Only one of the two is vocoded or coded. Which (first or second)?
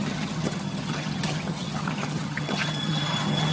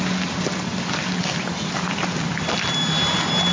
first